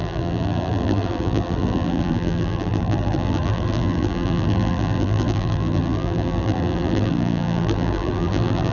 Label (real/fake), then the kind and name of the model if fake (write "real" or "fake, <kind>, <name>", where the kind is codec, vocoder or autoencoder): fake, vocoder, BigVGAN v2